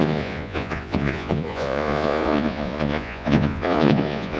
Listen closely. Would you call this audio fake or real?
fake